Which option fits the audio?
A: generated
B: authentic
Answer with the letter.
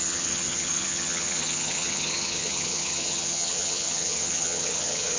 A